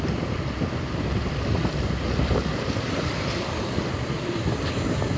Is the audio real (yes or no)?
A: no